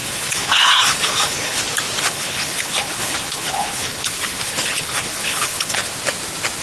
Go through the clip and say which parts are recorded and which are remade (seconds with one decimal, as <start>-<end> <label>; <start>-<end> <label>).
0.0-1.6 remade; 1.6-2.0 recorded; 2.0-5.9 remade; 5.9-6.6 recorded

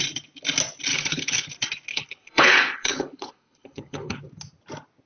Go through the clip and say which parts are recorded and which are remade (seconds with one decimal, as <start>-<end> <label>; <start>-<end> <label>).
0.0-0.9 recorded; 0.9-1.5 remade; 1.5-1.9 recorded; 1.9-4.2 remade; 4.2-5.1 recorded